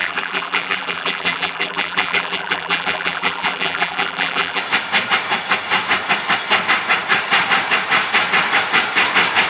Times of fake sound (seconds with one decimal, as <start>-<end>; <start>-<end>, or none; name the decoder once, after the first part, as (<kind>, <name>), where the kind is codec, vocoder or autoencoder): 0.0-4.6 (vocoder, BigVGAN v2)